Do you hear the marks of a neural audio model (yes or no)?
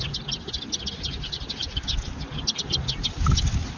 no